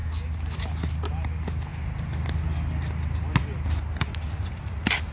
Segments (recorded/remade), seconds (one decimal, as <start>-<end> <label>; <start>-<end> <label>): 0.0-5.1 recorded